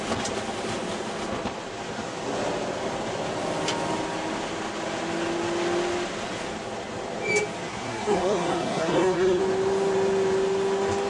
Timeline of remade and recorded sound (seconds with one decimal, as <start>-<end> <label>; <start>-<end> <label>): 0.0-7.7 recorded; 7.7-9.4 remade; 9.4-11.1 recorded